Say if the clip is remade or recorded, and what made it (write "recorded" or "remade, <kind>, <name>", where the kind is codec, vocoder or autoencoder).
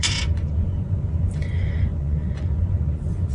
remade, vocoder, Vocos